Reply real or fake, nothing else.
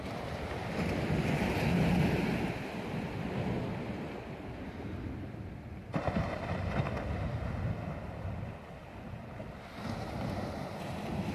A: real